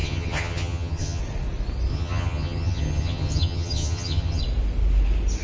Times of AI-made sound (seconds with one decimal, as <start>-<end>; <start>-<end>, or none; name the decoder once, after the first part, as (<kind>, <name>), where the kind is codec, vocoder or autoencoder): 0.0-1.2 (vocoder, HiFi-GAN); 1.9-4.4